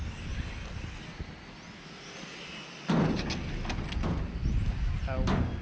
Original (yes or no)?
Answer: yes